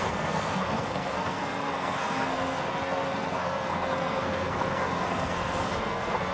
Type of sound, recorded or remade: remade